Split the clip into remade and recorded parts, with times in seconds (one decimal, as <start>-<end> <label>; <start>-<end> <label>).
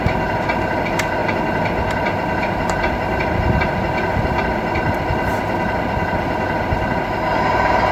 0.0-7.9 remade